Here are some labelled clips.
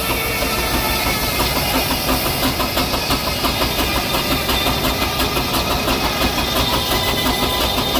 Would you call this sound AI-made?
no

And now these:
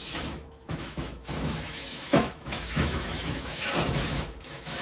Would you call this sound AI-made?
yes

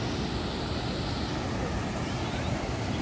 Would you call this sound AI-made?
no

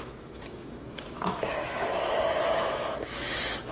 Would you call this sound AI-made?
yes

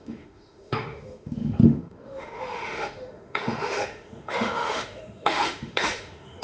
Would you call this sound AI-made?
yes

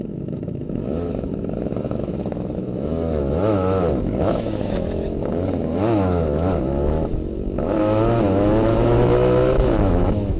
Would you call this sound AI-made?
yes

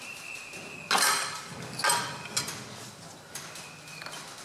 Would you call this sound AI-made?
no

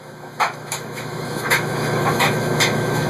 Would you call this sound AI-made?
yes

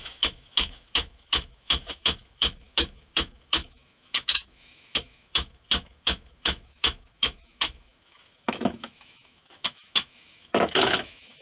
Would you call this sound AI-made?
yes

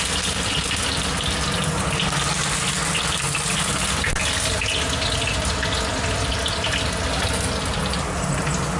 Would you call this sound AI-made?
no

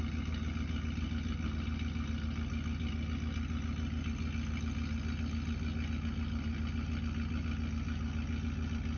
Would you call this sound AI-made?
no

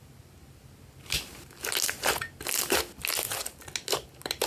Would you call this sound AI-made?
no